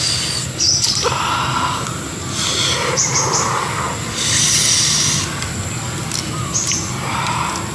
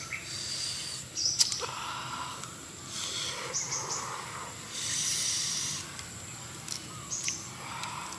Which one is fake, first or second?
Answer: second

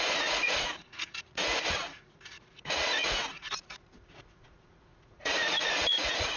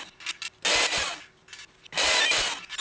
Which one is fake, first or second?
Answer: first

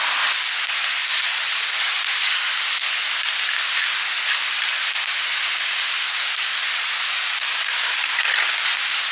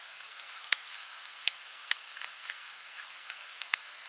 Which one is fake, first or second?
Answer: second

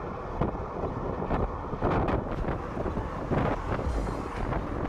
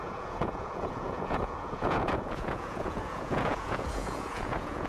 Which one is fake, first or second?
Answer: second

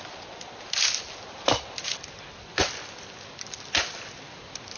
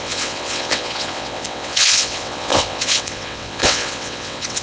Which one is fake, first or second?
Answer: second